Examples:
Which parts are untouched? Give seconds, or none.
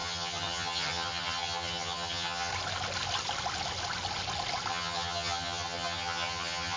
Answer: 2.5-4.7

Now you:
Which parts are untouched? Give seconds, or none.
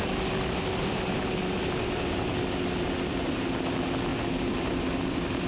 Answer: 0.0-5.5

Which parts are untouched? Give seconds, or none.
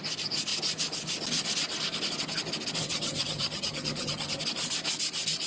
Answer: 0.0-2.8; 4.4-5.5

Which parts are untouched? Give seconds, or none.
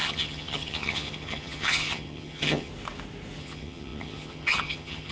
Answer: 2.7-3.4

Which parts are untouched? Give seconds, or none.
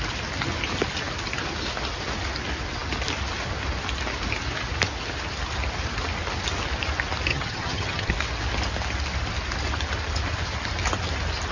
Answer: 0.0-7.3; 8.1-11.5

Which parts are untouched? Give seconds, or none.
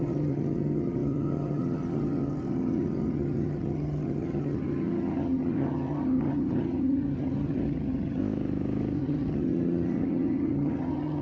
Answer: 8.2-9.0